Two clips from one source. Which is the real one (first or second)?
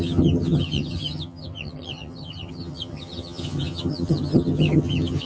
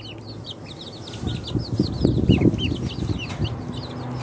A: second